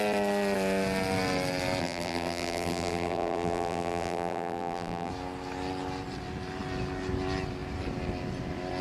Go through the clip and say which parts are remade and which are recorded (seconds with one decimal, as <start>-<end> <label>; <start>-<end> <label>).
0.0-1.8 recorded; 1.8-5.1 remade; 5.1-8.8 recorded